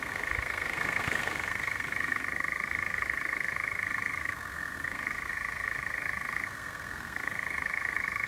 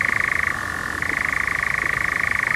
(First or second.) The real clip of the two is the second